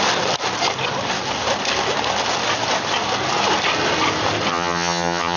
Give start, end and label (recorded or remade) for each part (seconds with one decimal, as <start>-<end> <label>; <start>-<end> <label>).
0.0-4.5 recorded; 4.5-5.4 remade